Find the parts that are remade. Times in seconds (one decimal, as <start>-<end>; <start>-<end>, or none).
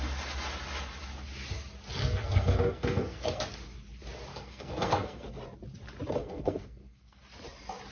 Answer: 2.0-3.4; 4.3-5.4; 6.2-7.2